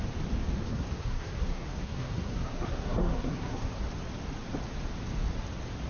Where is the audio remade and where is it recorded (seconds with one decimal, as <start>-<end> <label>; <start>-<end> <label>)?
0.0-0.7 recorded; 0.7-3.8 remade; 3.8-5.9 recorded